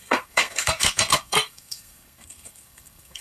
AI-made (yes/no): yes